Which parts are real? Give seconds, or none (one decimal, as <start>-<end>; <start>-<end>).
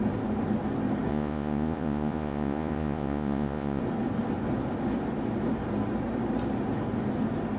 0.0-1.1; 3.8-7.6